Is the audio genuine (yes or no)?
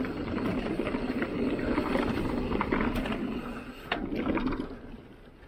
yes